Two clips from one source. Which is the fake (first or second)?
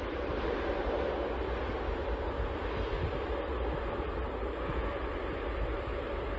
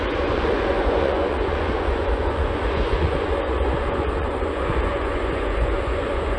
second